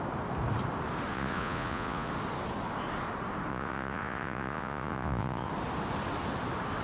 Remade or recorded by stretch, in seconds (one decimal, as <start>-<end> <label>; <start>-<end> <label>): 0.0-1.1 recorded; 1.1-2.1 remade; 2.1-3.5 recorded; 3.5-5.5 remade; 5.5-6.8 recorded